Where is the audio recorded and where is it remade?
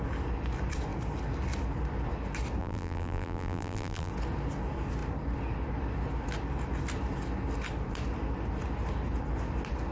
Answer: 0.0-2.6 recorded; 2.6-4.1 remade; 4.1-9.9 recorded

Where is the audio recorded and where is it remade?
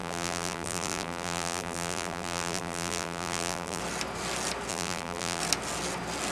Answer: 0.0-3.8 remade; 3.8-4.7 recorded; 4.7-5.4 remade; 5.4-6.3 recorded